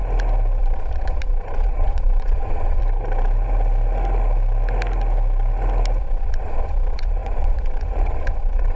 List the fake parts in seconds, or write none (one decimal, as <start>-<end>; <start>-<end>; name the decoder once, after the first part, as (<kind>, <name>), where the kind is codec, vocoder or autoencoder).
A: 0.6-2.8 (vocoder, Vocos); 6.0-8.8